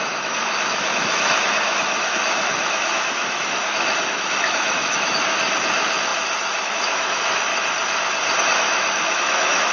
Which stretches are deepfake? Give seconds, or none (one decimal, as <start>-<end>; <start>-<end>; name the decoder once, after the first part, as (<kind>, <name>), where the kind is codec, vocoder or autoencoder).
0.0-7.5 (autoencoder, DAC-VAE); 8.4-9.7